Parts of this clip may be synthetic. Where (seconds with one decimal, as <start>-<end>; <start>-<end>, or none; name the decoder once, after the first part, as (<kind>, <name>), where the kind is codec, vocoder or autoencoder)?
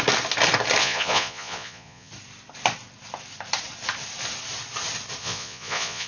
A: 0.8-2.1 (vocoder, Vocos); 5.2-6.1